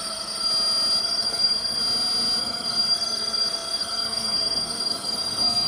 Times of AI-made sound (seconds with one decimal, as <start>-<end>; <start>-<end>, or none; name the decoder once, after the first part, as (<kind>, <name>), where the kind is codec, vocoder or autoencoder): 0.0-0.5 (codec, SNAC); 1.0-1.8; 2.4-5.7